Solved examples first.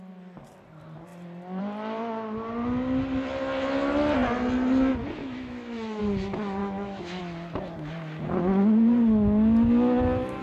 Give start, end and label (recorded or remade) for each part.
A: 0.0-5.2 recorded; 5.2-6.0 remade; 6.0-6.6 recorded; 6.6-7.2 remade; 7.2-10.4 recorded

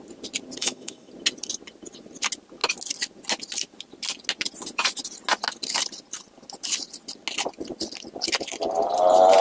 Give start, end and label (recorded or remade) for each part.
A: 0.0-0.6 recorded; 0.6-1.1 remade; 1.1-9.4 recorded

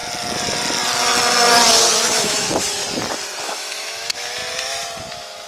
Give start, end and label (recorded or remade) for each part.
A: 0.0-2.1 recorded; 2.1-2.8 remade; 2.8-3.4 recorded; 3.4-4.4 remade; 4.4-5.1 recorded; 5.1-5.5 remade

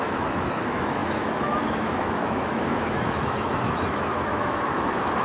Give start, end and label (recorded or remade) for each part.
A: 0.0-5.2 remade

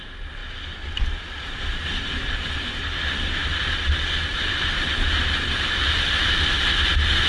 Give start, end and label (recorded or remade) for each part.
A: 0.0-7.3 recorded

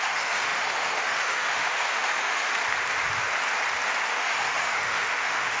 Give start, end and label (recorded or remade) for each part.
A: 0.0-2.5 remade; 2.5-4.1 recorded; 4.1-5.6 remade

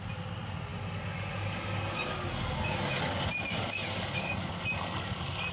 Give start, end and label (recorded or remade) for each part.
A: 0.0-5.5 recorded

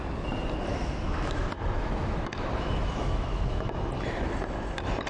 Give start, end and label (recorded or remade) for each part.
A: 0.0-0.7 recorded; 0.7-3.8 remade; 3.8-5.1 recorded